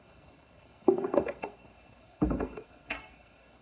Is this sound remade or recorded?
remade